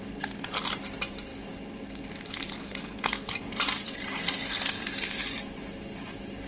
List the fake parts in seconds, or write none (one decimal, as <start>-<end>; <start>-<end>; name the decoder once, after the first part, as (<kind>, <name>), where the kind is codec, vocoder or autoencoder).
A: none